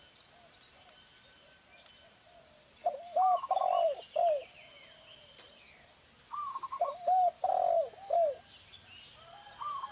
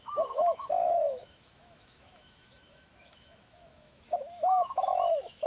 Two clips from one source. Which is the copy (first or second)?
second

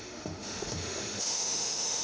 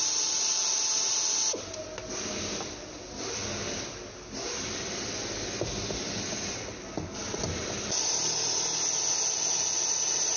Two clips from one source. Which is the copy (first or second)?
first